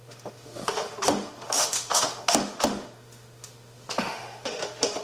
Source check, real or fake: fake